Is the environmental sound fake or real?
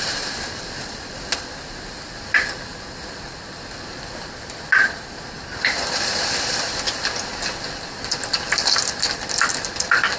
fake